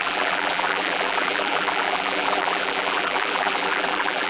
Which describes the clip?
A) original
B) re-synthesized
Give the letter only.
B